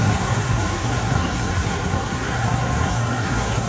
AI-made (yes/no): yes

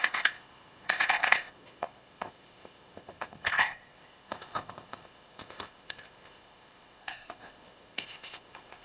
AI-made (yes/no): yes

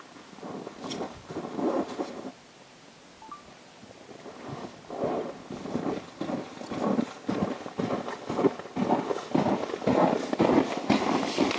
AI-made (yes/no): no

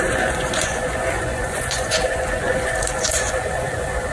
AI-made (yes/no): yes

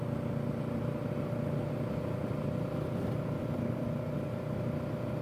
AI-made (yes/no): no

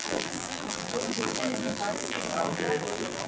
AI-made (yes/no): yes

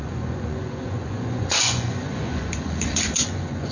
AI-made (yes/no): yes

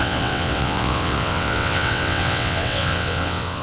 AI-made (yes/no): yes